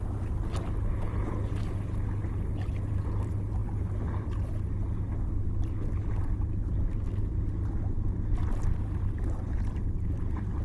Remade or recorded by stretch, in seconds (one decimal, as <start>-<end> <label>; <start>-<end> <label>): 0.0-10.6 recorded